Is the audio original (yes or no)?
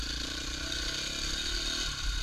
yes